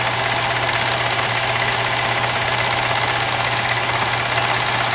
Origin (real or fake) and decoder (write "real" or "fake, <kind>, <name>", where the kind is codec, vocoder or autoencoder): real